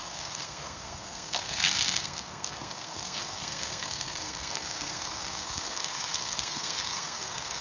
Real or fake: fake